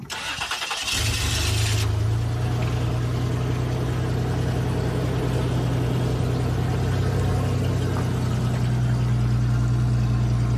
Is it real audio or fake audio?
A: real